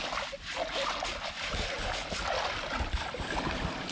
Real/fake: real